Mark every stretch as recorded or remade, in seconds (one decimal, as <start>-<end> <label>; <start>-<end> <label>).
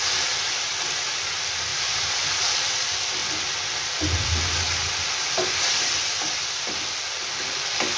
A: 0.0-1.7 recorded; 1.7-2.5 remade; 2.5-8.0 recorded